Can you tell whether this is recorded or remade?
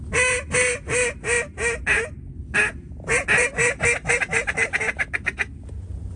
recorded